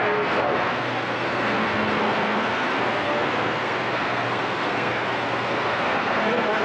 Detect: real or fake fake